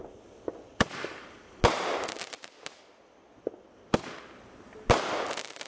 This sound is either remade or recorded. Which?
recorded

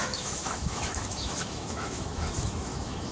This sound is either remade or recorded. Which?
remade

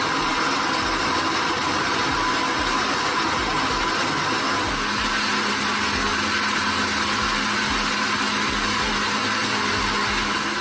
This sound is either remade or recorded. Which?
recorded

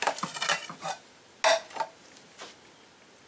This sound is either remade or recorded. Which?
recorded